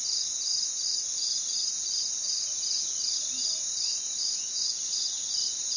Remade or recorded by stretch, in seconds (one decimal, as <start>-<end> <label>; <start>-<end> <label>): 0.0-5.8 recorded